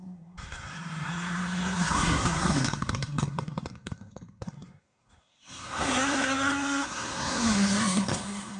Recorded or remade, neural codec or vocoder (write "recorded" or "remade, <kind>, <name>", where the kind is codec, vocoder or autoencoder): remade, codec, SNAC